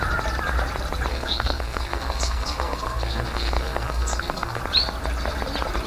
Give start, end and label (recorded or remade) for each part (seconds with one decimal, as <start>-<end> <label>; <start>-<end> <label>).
0.0-1.1 recorded; 1.1-4.6 remade; 4.6-5.9 recorded